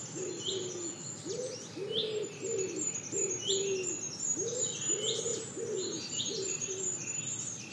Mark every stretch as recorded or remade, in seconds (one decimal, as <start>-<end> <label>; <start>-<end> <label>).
0.0-7.7 recorded